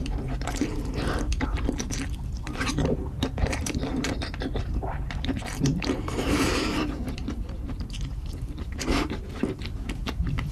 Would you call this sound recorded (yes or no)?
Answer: no